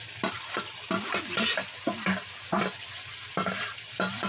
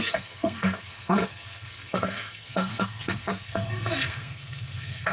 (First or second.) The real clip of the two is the first